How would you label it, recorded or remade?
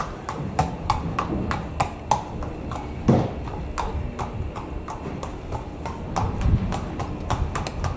recorded